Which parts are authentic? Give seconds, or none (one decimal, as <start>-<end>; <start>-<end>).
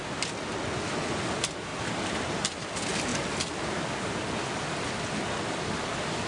0.0-6.3